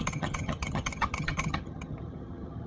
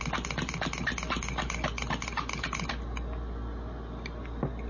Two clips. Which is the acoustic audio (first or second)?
second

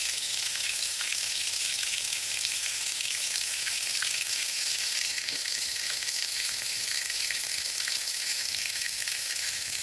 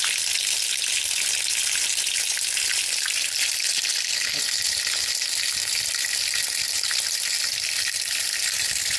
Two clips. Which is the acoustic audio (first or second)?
second